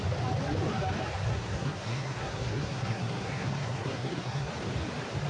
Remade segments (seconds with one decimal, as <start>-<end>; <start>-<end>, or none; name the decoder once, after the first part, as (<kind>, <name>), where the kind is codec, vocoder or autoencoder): 1.3-4.5 (codec, SNAC)